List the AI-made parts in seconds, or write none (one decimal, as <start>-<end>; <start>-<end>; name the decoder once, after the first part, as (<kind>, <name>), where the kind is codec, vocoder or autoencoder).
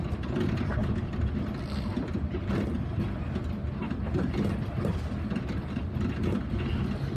none